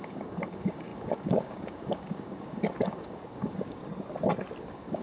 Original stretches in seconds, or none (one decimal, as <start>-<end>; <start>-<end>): 3.8-4.6